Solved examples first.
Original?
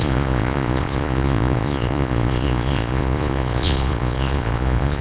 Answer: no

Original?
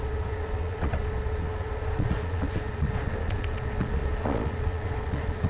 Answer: no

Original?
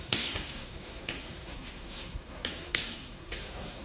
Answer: no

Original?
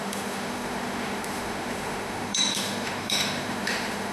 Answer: no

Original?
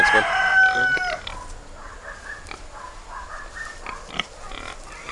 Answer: yes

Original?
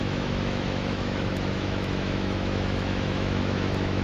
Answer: no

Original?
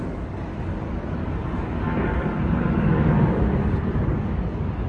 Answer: no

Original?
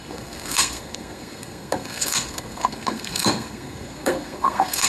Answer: no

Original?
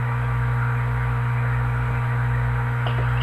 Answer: yes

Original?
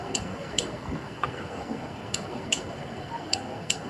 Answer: no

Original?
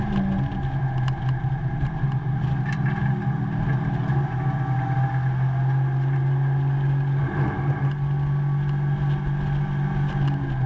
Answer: yes